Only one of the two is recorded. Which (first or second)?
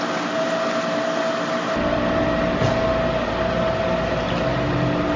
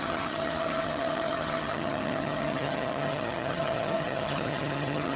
first